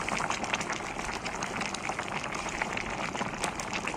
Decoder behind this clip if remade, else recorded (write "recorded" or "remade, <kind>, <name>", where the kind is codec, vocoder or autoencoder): recorded